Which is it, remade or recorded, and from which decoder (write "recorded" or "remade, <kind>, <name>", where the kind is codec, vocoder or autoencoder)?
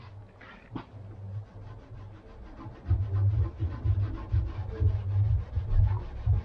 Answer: recorded